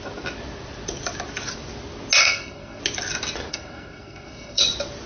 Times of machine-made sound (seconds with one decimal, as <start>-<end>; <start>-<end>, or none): 2.2-2.8; 3.5-4.6